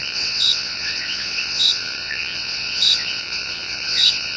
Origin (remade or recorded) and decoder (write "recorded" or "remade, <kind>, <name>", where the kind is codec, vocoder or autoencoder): remade, vocoder, WaveNeXt